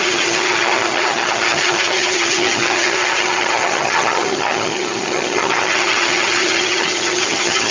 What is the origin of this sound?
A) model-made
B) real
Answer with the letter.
A